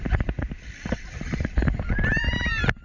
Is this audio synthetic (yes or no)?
no